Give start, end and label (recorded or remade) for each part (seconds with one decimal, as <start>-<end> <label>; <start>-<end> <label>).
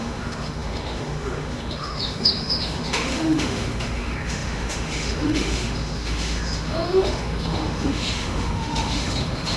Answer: 0.0-9.6 remade